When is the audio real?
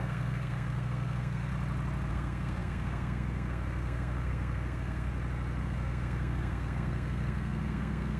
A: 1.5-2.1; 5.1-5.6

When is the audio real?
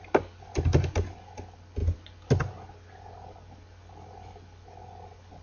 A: 0.0-5.4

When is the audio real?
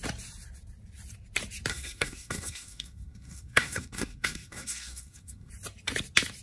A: 0.0-1.7; 5.5-6.4